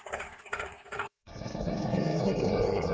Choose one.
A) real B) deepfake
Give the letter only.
B